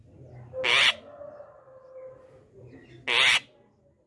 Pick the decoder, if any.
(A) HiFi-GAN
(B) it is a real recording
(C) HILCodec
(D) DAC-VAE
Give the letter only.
B